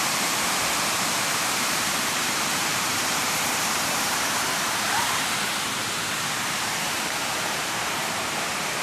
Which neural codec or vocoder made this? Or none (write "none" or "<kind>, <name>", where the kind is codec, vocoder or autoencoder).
vocoder, BigVGAN v2